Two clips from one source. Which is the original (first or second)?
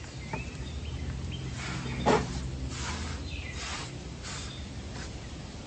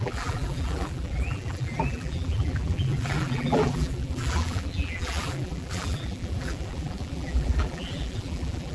first